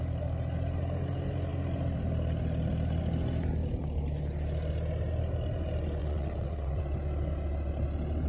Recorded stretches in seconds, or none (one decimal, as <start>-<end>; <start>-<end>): 0.0-6.0; 6.8-8.3